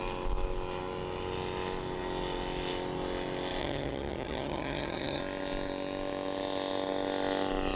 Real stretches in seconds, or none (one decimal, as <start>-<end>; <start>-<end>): 0.0-3.6; 5.2-7.8